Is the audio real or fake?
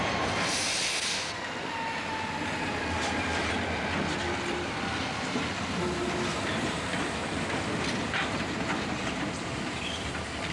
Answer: real